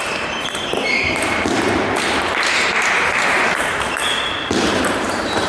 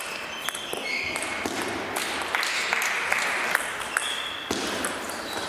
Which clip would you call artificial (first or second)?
first